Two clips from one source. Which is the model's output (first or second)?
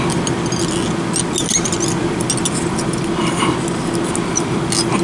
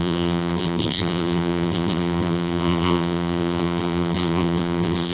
second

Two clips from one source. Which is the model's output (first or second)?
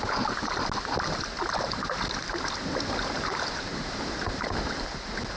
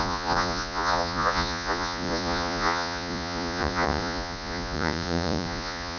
second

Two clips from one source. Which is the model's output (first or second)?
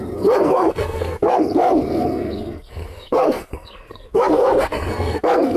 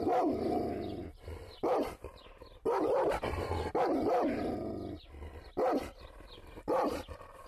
first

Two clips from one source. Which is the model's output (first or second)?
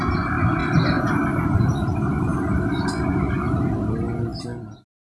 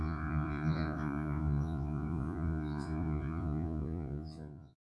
second